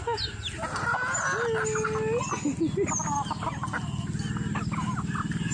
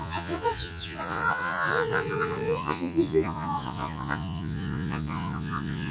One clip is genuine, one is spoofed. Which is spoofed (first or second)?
second